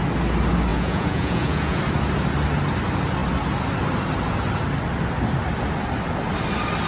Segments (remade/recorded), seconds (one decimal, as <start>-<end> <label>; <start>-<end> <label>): 0.0-0.7 recorded; 0.7-1.8 remade; 1.8-6.9 recorded